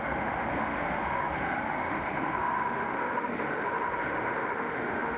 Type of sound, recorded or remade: remade